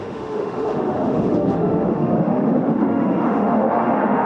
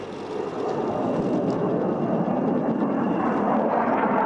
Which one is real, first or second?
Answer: second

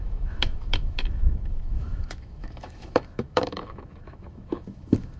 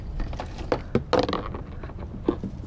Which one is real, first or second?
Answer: second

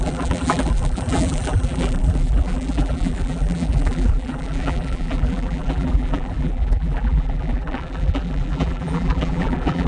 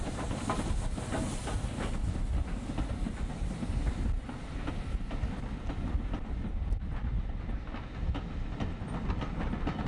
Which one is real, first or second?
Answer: second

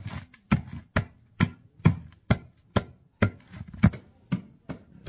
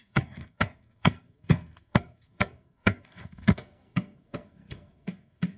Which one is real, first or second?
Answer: first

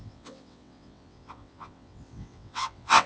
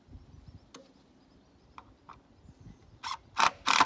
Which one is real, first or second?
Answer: second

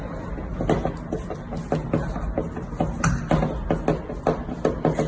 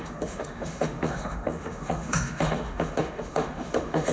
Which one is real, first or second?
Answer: first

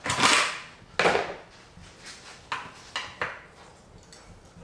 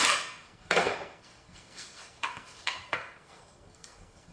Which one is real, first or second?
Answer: first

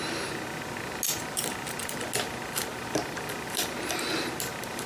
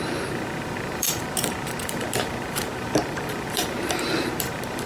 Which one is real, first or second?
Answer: first